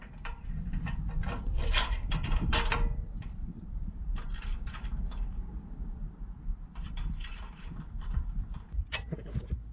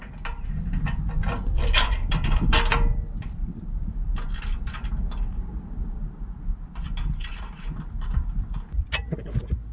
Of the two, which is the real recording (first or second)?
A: second